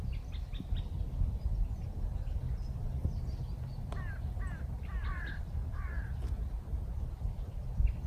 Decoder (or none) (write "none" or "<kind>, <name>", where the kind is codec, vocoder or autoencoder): none